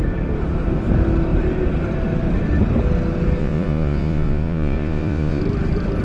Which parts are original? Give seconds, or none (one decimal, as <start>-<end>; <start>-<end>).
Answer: 0.0-3.4; 5.4-6.0

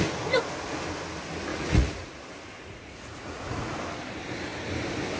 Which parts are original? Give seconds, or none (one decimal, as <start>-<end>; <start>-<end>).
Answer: 0.0-1.5; 2.1-2.7; 3.7-5.2

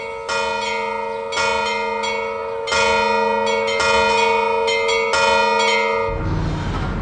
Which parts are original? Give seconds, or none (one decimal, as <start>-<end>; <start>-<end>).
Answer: 0.0-7.0

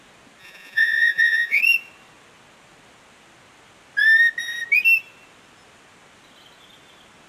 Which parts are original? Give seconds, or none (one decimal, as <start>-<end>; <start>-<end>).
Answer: 0.0-0.4; 1.6-7.3

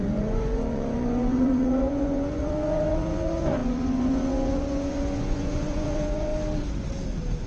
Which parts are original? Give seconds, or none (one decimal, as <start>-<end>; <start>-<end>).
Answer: 6.3-7.5

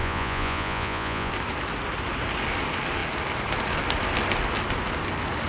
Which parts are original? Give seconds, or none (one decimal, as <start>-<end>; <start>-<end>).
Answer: 1.3-5.5

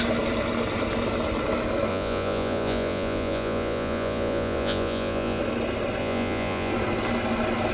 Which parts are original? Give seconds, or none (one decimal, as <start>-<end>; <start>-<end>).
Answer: 0.0-1.9; 5.4-6.0; 6.7-7.7

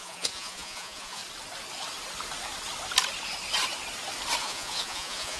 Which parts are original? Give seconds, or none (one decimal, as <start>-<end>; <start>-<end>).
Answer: 1.2-4.4